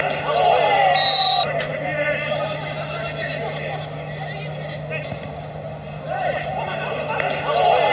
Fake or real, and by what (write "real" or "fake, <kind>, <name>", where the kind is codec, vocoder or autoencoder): real